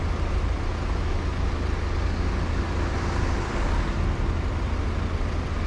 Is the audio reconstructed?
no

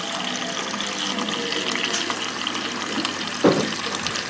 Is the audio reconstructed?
no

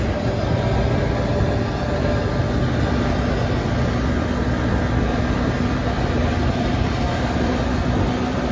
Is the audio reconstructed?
no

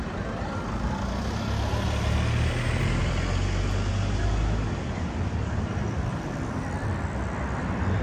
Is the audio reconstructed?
no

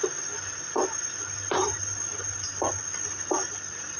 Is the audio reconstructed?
yes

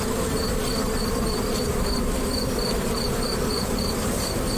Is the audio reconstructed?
no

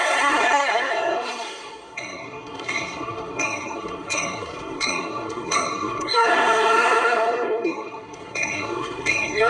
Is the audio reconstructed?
yes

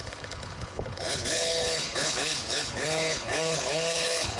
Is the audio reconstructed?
yes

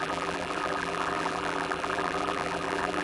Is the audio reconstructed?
yes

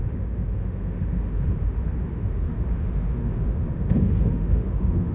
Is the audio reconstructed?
yes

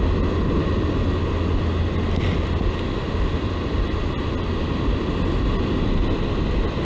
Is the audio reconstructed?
no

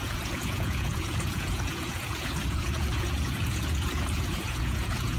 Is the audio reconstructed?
yes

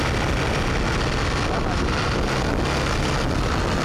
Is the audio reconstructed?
no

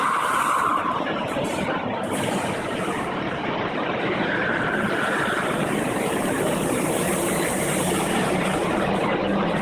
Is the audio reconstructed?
yes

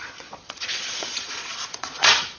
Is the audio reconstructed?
yes